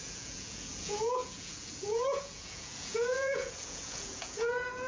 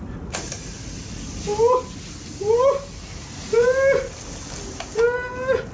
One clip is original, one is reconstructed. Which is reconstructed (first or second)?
first